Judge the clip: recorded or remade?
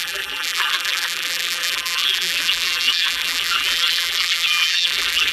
remade